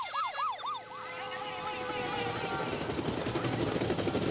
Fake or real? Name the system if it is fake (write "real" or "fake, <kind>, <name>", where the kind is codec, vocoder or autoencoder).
real